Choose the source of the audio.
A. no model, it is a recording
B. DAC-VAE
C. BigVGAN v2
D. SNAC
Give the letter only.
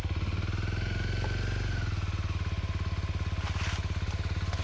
A